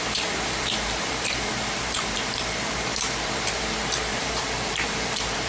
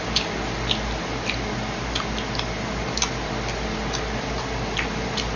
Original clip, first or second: second